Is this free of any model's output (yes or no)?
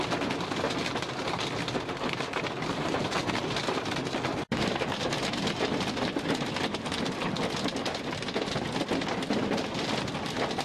no